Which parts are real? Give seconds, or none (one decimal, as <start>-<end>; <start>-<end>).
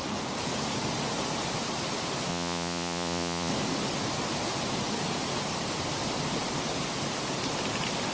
0.0-2.3; 3.5-8.1